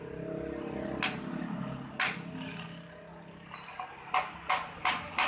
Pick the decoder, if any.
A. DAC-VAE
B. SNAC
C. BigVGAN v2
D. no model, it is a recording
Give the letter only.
D